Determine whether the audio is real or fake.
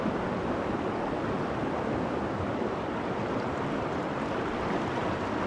real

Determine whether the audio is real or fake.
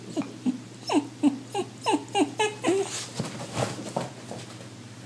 real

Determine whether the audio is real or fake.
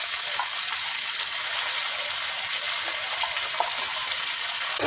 real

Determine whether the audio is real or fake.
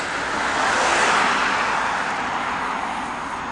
real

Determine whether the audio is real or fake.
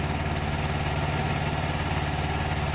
real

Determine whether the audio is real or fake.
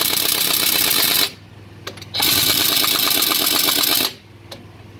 real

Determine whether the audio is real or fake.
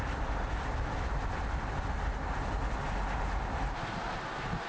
real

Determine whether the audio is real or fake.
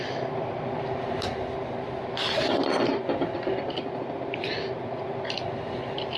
real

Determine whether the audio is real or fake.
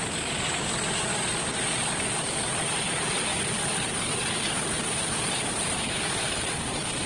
real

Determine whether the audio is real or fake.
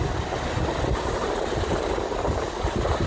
fake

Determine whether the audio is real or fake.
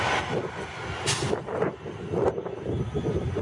real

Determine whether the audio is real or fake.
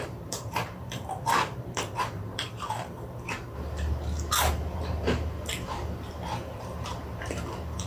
fake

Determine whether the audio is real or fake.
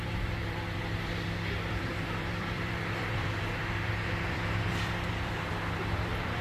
fake